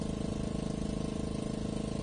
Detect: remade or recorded recorded